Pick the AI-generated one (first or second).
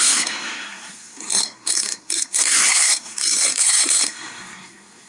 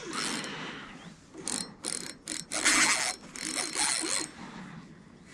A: first